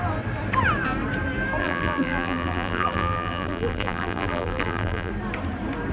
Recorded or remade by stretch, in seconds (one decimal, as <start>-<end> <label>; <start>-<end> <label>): 0.0-1.6 recorded; 1.6-5.1 remade; 5.1-5.9 recorded